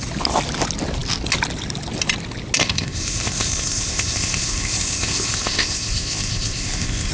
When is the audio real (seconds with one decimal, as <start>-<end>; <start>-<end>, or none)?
0.0-2.6

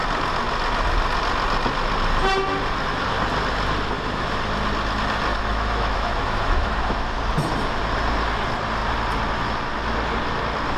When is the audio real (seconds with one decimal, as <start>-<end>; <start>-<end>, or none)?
0.0-5.3; 7.1-10.8

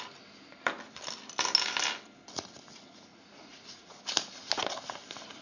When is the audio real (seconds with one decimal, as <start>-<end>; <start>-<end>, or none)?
0.0-3.1; 4.0-5.4

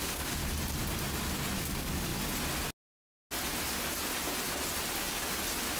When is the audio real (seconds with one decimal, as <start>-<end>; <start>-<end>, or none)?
0.4-1.6; 2.1-5.8

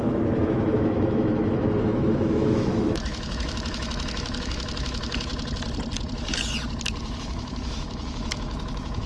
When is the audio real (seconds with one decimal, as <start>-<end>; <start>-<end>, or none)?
5.3-7.2

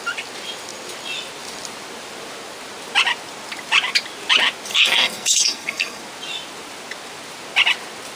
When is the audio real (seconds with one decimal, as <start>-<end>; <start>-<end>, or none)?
0.0-4.7; 6.0-8.2

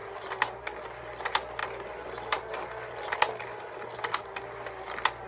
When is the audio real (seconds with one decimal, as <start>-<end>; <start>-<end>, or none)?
0.0-5.3

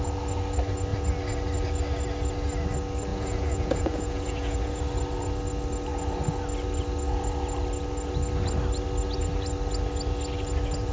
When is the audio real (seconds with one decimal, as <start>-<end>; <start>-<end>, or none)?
0.0-3.1; 4.8-10.9